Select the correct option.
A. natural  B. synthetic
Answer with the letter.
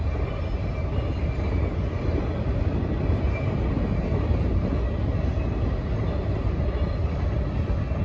A